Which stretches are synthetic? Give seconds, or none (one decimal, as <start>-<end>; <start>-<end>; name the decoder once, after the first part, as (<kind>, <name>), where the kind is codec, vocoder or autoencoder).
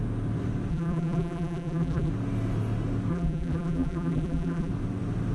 0.7-2.1 (vocoder, BigVGAN v2); 3.1-4.7